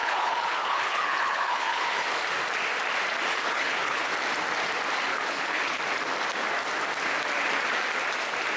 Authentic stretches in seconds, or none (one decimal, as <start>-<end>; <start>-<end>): 2.2-3.3; 4.0-5.1; 5.8-8.6